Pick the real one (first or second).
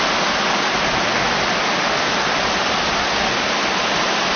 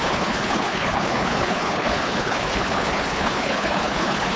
first